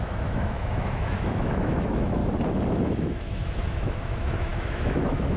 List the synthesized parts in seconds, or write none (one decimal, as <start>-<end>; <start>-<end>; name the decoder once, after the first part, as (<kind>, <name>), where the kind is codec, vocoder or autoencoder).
0.0-2.2 (autoencoder, DAC-VAE); 2.7-5.4